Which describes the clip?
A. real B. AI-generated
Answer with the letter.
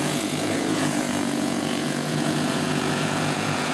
B